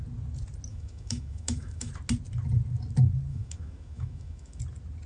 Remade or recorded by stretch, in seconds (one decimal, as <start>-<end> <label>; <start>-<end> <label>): 0.0-0.7 recorded; 0.7-1.9 remade; 1.9-3.3 recorded; 3.3-4.6 remade; 4.6-5.1 recorded